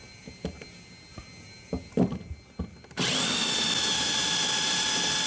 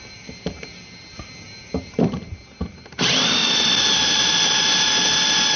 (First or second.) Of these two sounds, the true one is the first